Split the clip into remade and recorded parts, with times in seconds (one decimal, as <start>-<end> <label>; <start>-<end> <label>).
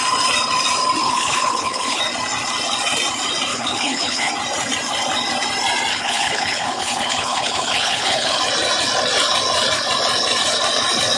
0.0-1.0 recorded; 1.0-2.0 remade; 2.0-3.5 recorded; 3.5-4.3 remade; 4.3-5.9 recorded; 5.9-8.4 remade; 8.4-11.2 recorded